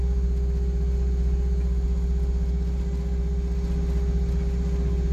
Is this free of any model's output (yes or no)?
yes